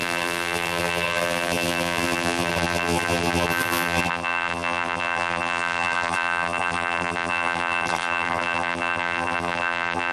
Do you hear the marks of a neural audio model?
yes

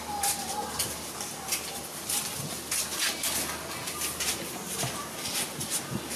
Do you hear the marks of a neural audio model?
no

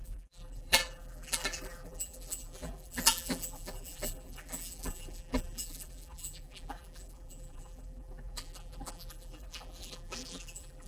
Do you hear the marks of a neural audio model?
yes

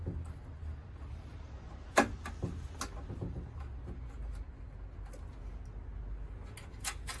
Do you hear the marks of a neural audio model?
no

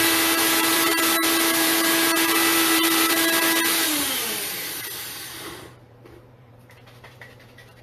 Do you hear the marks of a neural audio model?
yes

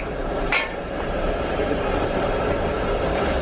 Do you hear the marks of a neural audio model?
yes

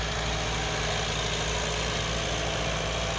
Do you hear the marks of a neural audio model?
no